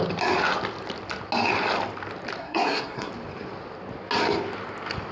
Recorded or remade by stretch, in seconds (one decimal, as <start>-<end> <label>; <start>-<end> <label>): 0.0-2.4 recorded; 2.4-3.1 remade; 3.1-5.1 recorded